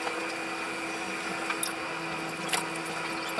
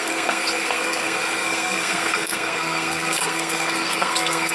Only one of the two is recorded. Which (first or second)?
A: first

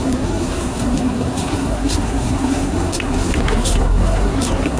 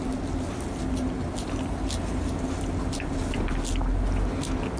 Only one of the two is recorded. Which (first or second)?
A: second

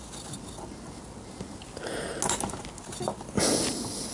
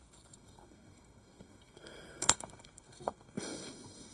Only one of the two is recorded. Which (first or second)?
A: first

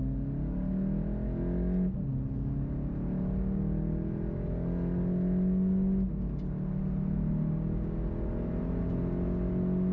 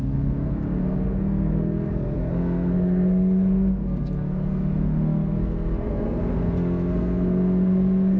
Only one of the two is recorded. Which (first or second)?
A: first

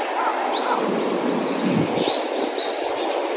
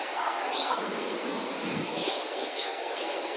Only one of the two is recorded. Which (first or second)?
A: first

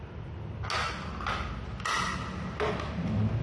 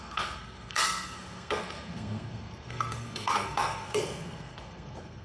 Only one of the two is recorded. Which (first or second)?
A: first